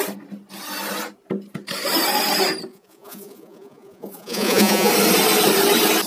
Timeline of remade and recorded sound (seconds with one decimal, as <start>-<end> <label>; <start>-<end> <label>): 0.0-2.7 recorded; 2.7-4.9 remade; 4.9-6.1 recorded